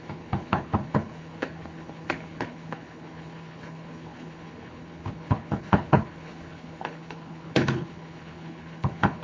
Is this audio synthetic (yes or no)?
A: yes